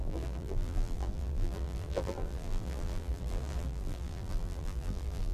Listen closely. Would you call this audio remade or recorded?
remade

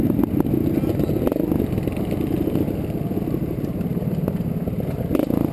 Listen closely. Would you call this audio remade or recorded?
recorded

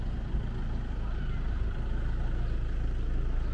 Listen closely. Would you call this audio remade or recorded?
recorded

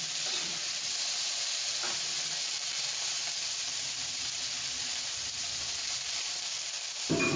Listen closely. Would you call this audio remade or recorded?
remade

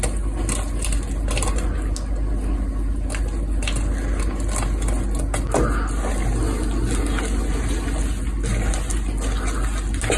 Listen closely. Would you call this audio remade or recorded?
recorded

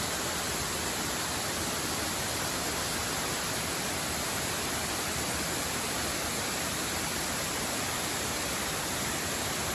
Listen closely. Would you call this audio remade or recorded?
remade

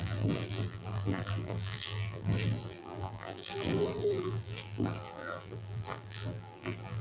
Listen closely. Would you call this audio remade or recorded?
remade